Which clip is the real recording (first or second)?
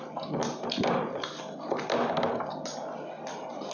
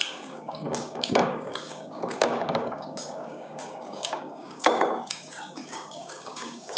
first